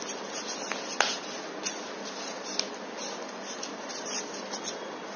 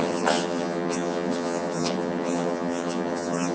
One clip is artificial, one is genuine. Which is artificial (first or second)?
second